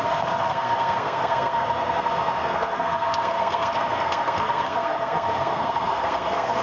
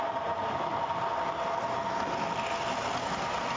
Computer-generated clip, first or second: first